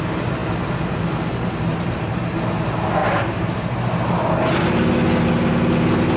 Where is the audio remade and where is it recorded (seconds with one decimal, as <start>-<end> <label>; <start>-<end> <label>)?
0.0-1.7 recorded; 1.7-2.2 remade; 2.2-3.0 recorded; 3.0-4.3 remade; 4.3-6.2 recorded